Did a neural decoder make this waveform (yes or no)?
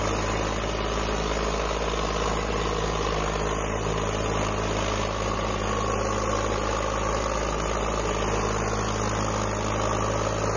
no